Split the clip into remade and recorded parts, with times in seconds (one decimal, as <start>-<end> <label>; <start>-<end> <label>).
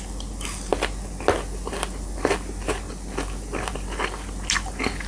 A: 0.0-5.1 recorded